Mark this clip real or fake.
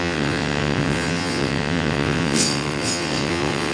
fake